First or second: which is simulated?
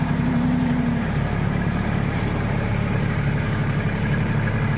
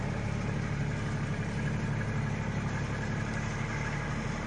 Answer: first